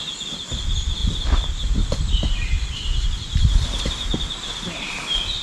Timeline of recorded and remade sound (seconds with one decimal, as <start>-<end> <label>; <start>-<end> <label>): 0.0-5.4 recorded